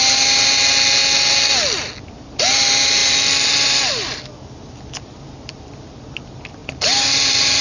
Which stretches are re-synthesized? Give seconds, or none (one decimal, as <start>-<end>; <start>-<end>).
6.6-7.6